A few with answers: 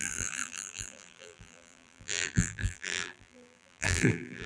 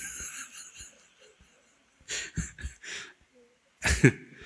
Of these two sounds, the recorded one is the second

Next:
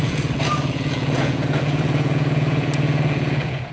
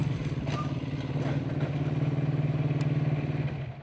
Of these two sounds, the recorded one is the second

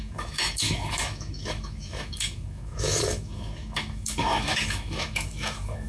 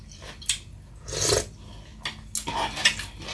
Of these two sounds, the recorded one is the second